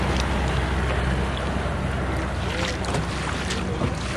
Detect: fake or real real